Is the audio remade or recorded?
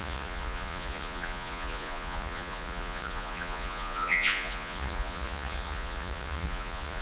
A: remade